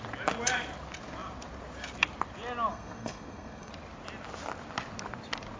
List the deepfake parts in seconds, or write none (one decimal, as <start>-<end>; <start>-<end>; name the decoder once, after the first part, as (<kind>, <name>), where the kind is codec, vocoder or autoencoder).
2.7-3.7 (codec, SNAC)